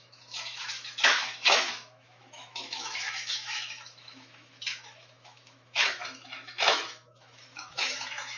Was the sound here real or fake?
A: fake